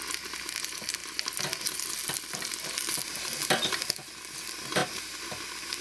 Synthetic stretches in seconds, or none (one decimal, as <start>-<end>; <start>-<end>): none